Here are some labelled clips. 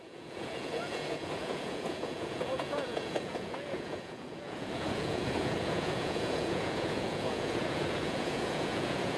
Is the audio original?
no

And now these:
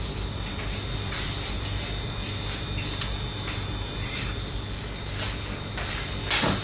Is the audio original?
yes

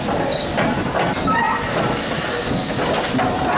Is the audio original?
yes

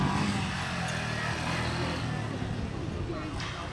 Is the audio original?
yes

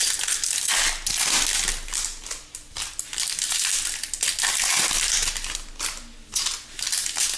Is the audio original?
yes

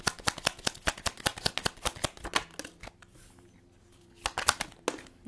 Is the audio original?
yes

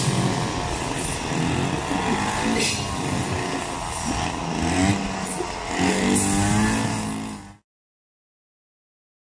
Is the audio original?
yes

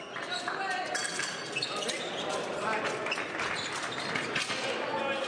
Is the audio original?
yes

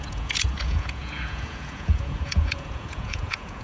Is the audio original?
no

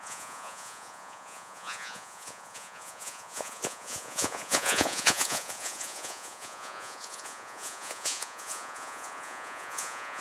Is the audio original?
no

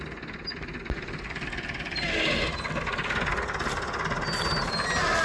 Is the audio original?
yes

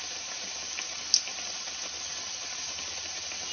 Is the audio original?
yes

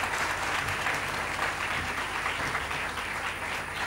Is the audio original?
yes